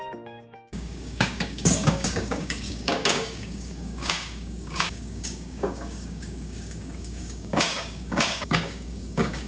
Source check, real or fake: fake